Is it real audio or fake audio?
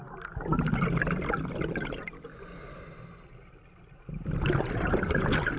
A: real